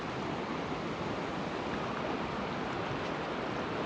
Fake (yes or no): no